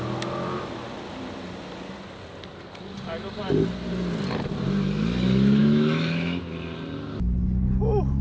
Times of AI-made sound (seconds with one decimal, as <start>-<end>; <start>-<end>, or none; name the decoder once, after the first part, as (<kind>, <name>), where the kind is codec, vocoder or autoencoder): 5.6-6.4 (autoencoder, DAC-VAE)